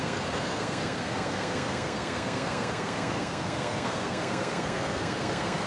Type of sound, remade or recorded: remade